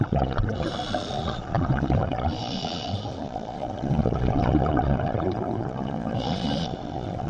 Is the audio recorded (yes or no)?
no